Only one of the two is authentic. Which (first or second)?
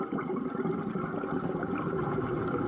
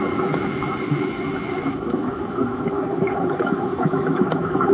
first